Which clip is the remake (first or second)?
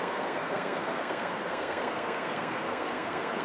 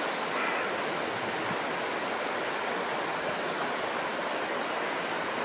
first